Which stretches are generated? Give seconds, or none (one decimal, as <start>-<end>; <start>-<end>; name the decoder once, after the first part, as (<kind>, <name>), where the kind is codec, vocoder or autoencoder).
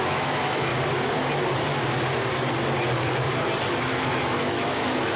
0.0-0.7 (autoencoder, DAC-VAE); 3.8-5.2